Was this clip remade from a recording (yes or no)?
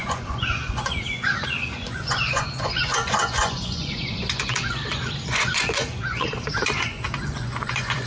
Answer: yes